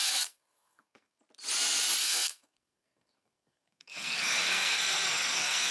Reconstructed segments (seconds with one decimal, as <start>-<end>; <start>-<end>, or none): 0.0-1.2; 2.0-5.7

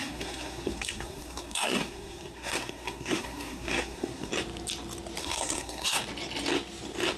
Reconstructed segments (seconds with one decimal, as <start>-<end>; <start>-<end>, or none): 0.0-4.3; 5.2-6.0